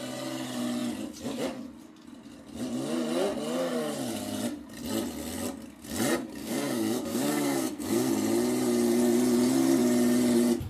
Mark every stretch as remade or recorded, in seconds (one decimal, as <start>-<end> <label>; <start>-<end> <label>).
0.0-6.4 recorded; 6.4-8.1 remade; 8.1-10.7 recorded